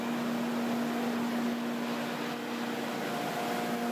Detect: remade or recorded recorded